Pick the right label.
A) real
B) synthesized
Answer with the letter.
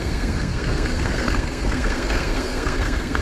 B